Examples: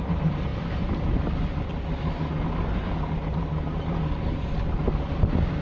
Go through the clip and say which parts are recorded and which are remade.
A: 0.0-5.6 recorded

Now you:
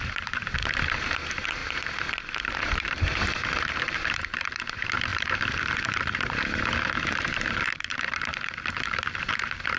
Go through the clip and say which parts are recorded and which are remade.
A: 0.0-0.6 remade; 0.6-1.2 recorded; 1.2-1.6 remade; 1.6-2.4 recorded; 2.4-9.8 remade

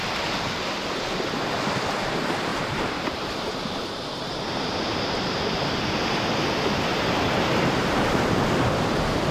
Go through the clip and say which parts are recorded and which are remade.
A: 0.0-2.5 recorded; 2.5-3.9 remade; 3.9-6.9 recorded; 6.9-8.4 remade; 8.4-9.3 recorded

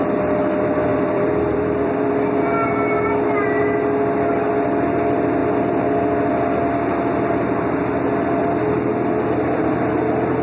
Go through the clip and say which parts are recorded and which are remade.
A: 0.0-0.9 recorded; 0.9-2.1 remade; 2.1-10.4 recorded

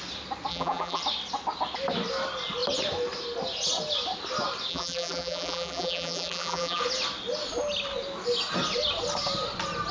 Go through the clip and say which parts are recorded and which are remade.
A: 0.0-0.5 recorded; 0.5-1.0 remade; 1.0-4.7 recorded; 4.7-6.8 remade; 6.8-9.9 recorded

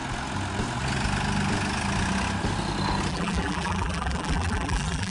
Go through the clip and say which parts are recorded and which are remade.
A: 0.0-3.1 recorded; 3.1-5.1 remade